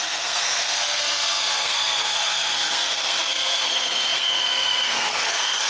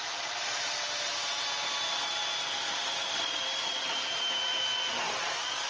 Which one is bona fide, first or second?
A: second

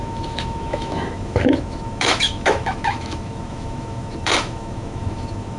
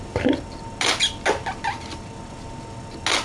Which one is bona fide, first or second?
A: second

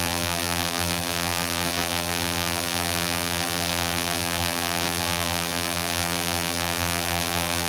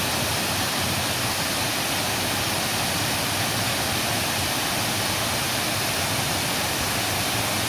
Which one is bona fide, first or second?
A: second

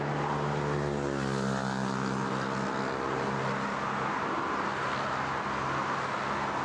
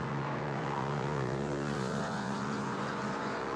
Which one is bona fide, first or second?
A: first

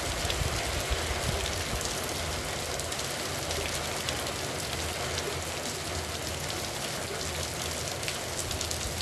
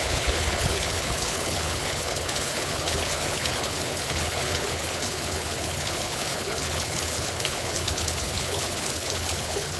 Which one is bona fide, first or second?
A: first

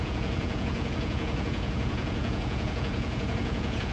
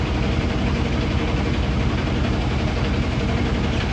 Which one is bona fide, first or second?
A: second